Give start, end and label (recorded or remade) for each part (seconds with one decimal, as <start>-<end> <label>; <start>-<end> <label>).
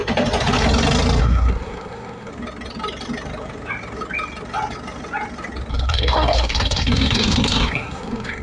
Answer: 0.0-1.2 recorded; 1.2-2.3 remade; 2.3-5.7 recorded; 5.7-8.4 remade